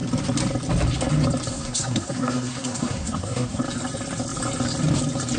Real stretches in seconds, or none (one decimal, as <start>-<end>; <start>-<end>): 0.0-1.5; 3.6-5.4